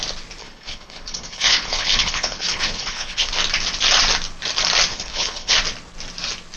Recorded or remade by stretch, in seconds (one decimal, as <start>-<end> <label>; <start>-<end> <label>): 0.0-0.4 recorded; 0.4-3.3 remade; 3.3-4.9 recorded; 4.9-5.6 remade; 5.6-6.6 recorded